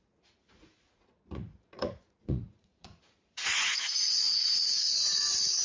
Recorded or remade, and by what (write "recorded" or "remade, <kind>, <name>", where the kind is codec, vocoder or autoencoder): remade, vocoder, Vocos